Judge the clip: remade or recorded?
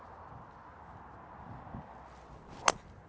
recorded